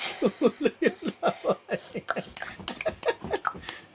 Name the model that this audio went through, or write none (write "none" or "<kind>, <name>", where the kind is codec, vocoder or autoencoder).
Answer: none